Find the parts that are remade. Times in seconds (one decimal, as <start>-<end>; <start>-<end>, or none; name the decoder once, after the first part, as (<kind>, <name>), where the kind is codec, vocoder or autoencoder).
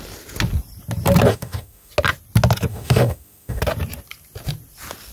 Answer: 1.3-1.9 (autoencoder, DAC-VAE); 2.7-3.6